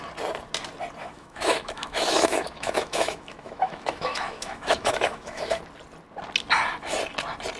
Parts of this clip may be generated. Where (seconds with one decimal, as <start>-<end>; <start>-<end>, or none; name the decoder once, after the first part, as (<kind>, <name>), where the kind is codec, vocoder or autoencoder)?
1.0-5.6 (autoencoder, DAC-VAE)